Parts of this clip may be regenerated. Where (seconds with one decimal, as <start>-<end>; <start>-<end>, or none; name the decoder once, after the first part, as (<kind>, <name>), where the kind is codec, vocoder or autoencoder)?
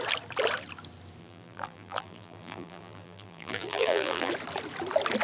1.2-4.3 (vocoder, BigVGAN v2)